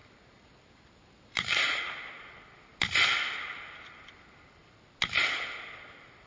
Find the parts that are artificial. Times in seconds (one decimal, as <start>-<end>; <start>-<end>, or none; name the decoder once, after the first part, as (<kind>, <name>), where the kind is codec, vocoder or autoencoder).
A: 0.0-1.8 (vocoder, BigVGAN v2)